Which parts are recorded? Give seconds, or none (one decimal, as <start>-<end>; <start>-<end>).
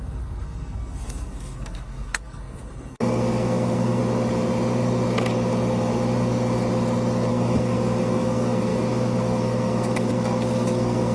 4.0-7.3